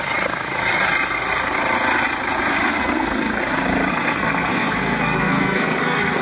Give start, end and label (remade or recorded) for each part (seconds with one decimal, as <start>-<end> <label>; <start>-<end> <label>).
0.0-2.7 recorded; 2.7-3.4 remade; 3.4-3.9 recorded; 3.9-6.2 remade